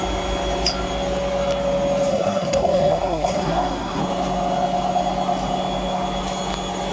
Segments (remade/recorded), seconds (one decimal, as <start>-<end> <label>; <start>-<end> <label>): 0.0-2.1 recorded; 2.1-4.0 remade; 4.0-6.9 recorded